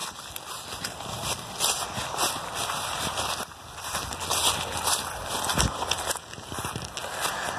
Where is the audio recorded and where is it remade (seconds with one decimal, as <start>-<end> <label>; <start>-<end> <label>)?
0.0-7.6 recorded